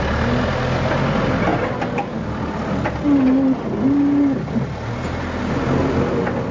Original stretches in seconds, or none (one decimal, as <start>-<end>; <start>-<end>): 0.0-6.5